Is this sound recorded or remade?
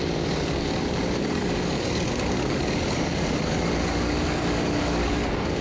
remade